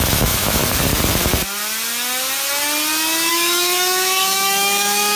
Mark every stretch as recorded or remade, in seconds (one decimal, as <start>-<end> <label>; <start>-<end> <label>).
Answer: 0.0-0.6 remade; 0.6-3.3 recorded; 3.3-5.2 remade

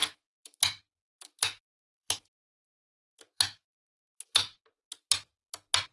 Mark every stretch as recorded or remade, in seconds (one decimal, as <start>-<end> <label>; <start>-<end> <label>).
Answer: 0.0-0.6 remade; 0.6-1.1 recorded; 1.1-4.6 remade; 4.6-5.9 recorded